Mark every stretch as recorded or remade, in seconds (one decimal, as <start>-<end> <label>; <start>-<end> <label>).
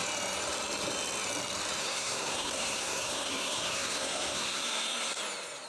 0.0-1.8 recorded; 1.8-5.2 remade; 5.2-5.7 recorded